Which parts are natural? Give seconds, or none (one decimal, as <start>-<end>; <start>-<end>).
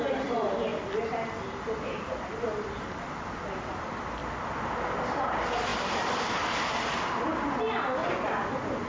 4.2-5.3; 8.0-8.9